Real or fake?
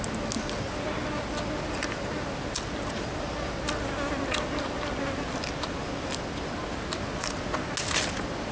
real